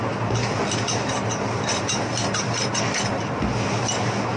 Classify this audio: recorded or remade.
recorded